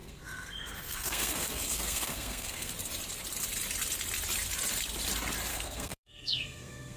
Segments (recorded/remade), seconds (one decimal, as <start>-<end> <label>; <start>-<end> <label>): 0.0-2.7 remade; 2.7-5.5 recorded; 5.5-7.0 remade